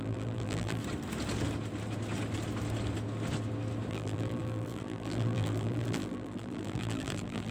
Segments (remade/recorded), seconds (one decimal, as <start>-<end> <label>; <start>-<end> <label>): 0.0-0.8 remade; 0.8-3.9 recorded; 3.9-7.5 remade